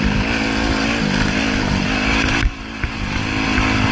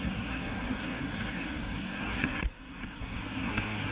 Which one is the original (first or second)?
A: first